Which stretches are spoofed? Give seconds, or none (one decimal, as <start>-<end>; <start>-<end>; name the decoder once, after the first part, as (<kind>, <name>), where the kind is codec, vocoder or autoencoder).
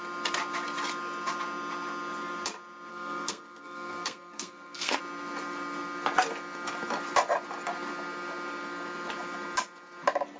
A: 2.9-5.0 (codec, SNAC)